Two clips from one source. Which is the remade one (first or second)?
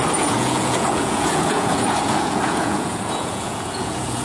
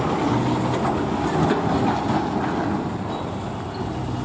first